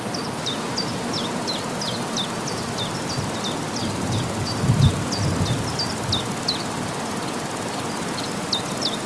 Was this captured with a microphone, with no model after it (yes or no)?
yes